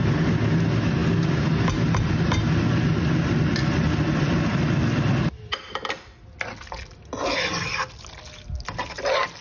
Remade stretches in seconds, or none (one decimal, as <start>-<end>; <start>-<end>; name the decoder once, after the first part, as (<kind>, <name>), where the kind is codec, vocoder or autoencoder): none